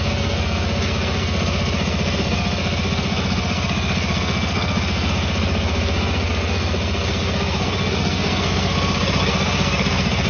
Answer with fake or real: fake